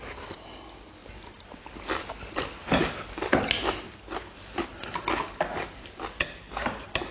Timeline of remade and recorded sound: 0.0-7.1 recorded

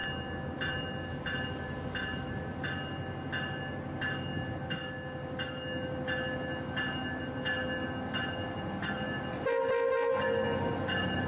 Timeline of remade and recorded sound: 0.0-11.3 recorded

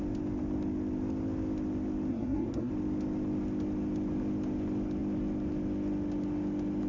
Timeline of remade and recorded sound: 0.0-2.1 recorded; 2.1-2.7 remade; 2.7-6.9 recorded

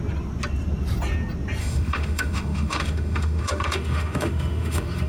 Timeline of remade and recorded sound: 0.0-1.6 recorded; 1.6-5.1 remade

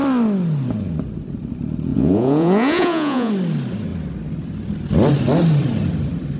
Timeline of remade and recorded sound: 0.0-1.9 recorded; 1.9-3.3 remade; 3.3-6.4 recorded

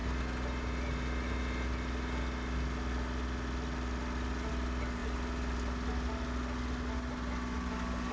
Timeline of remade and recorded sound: 0.0-8.1 recorded

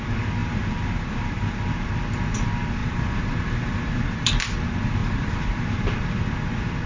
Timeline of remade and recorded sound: 0.0-0.4 recorded; 0.4-1.6 remade; 1.6-2.8 recorded; 2.8-4.3 remade; 4.3-5.0 recorded; 5.0-5.8 remade; 5.8-6.9 recorded